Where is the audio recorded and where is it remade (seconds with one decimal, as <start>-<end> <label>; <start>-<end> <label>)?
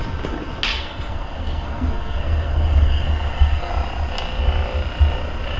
0.0-0.7 recorded; 0.7-3.7 remade; 3.7-5.6 recorded